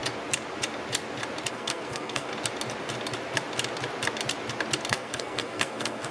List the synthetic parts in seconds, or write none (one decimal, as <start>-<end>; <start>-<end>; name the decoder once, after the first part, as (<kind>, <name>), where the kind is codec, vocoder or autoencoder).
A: 1.5-2.3 (codec, SNAC); 4.9-6.1

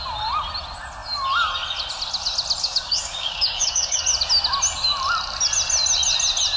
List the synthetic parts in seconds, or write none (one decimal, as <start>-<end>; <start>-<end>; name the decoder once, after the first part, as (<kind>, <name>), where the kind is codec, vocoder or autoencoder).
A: 2.6-4.0 (codec, DAC)

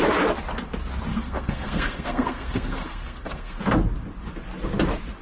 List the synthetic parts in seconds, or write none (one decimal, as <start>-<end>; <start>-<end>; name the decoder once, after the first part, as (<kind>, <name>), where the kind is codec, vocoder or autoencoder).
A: 1.1-3.6 (codec, SNAC)